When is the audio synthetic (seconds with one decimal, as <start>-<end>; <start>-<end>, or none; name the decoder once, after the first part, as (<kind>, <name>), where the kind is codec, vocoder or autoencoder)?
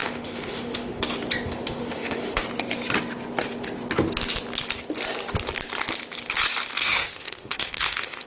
0.0-1.0 (autoencoder, DAC-VAE); 1.7-2.4; 6.7-8.3